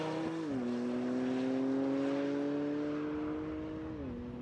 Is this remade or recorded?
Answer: recorded